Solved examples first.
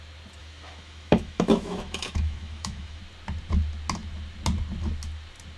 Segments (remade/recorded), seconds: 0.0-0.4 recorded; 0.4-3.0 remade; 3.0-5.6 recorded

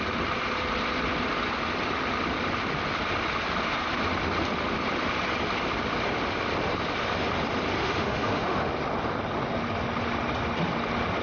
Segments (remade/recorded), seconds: 0.0-7.8 recorded; 7.8-8.7 remade; 8.7-11.2 recorded

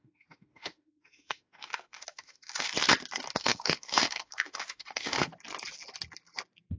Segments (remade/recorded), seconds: 0.0-2.7 remade; 2.7-3.4 recorded; 3.4-5.3 remade; 5.3-6.8 recorded

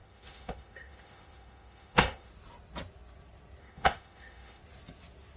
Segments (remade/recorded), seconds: 0.0-2.3 remade; 2.3-3.6 recorded; 3.6-4.6 remade; 4.6-5.4 recorded

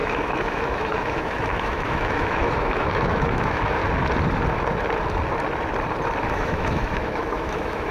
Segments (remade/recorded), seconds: 0.0-3.8 remade; 3.8-6.2 recorded; 6.2-7.9 remade

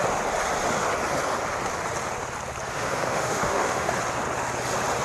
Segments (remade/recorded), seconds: 0.0-2.7 recorded; 2.7-3.9 remade; 3.9-5.0 recorded

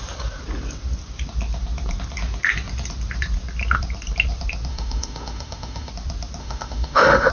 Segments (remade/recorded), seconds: 0.0-4.7 recorded; 4.7-5.9 remade; 5.9-6.4 recorded; 6.4-7.3 remade

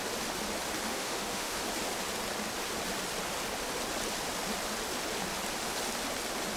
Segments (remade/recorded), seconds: 0.0-0.9 recorded; 0.9-1.6 remade; 1.6-6.6 recorded